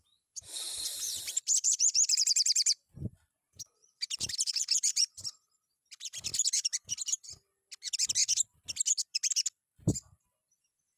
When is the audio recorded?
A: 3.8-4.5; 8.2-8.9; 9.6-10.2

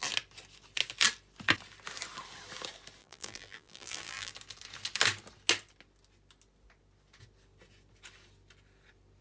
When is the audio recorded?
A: 0.0-3.0; 4.3-9.2

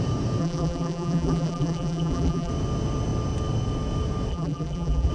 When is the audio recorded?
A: 0.0-0.4; 2.5-4.3

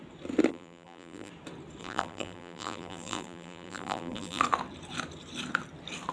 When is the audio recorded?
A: 0.0-0.5; 1.3-1.8; 4.4-6.1

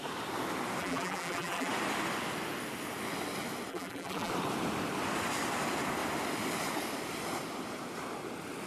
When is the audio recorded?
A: 0.0-0.8; 1.7-3.7; 4.3-8.7

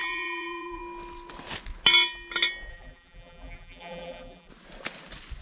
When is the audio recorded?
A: 0.8-2.7; 4.5-5.4